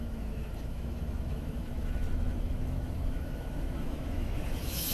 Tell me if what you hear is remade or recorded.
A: remade